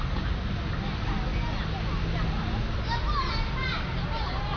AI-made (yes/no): no